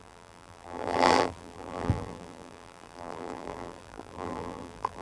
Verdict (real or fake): fake